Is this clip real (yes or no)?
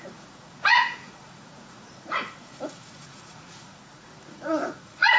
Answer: no